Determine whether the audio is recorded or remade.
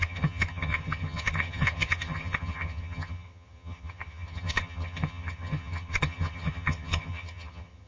remade